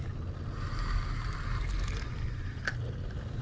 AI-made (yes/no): no